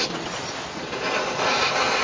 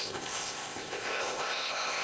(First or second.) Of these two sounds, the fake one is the second